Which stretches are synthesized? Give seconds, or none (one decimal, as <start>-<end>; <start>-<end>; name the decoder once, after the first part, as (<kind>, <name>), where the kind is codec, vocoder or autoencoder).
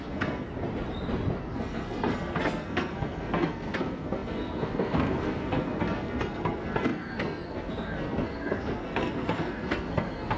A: 0.0-0.5 (codec, SNAC); 1.4-10.4